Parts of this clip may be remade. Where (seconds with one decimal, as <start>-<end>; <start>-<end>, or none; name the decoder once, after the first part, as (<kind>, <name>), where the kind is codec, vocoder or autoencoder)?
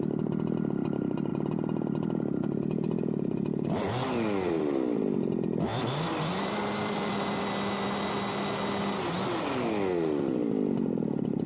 5.7-7.4 (vocoder, BigVGAN v2)